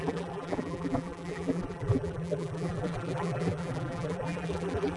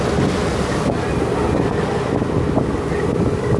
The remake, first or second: first